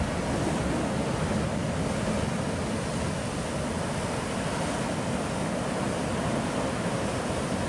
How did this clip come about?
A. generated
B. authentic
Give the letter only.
B